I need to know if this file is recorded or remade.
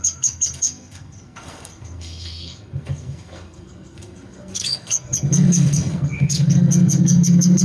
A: remade